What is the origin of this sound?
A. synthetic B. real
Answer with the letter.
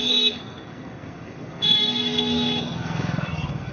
A